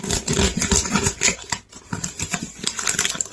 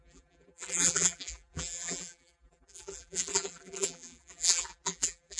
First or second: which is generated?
second